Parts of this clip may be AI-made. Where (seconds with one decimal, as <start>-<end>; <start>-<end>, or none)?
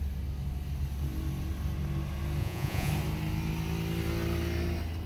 2.4-2.9